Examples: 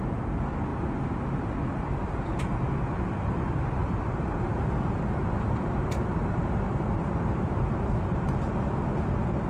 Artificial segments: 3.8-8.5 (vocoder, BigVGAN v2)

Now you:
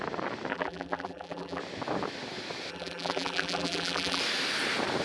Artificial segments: 0.5-1.6 (vocoder, BigVGAN v2); 2.7-4.2

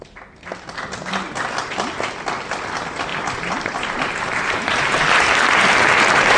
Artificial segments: 3.1-5.0 (vocoder, BigVGAN v2)

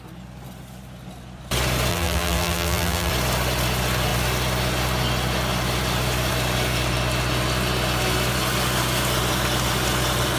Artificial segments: 1.9-3.1 (vocoder, BigVGAN v2)